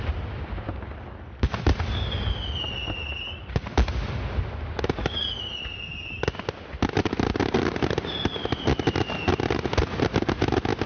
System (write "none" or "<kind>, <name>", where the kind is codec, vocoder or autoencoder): none